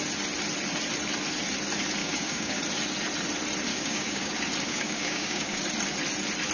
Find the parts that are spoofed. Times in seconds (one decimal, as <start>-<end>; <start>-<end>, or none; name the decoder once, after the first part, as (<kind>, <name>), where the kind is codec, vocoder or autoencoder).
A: 2.0-2.6 (codec, DAC); 3.7-4.3; 4.7-5.6